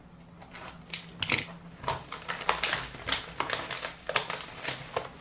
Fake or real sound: real